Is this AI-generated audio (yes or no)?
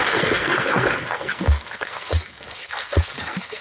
yes